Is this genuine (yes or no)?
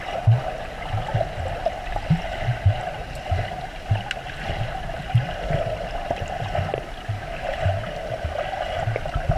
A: yes